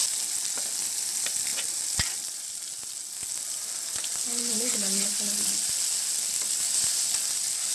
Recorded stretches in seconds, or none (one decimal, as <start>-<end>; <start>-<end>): 0.0-7.7

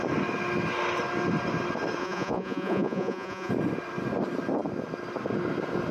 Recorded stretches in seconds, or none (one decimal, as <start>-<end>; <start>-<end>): 0.0-2.0; 3.5-5.9

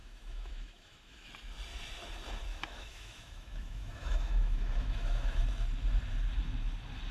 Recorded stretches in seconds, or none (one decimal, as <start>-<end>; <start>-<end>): 1.3-2.5; 5.4-7.1

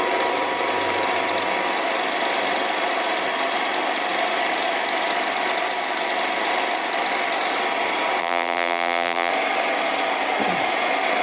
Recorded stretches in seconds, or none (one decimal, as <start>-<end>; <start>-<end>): 0.0-8.2; 9.3-11.2

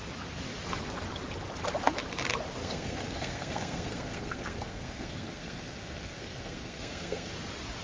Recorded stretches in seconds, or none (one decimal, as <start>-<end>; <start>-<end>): 0.0-2.6; 7.3-7.8

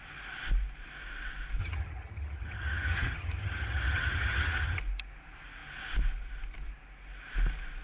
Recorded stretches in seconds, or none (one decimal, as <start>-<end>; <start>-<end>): 0.0-1.6; 4.8-7.8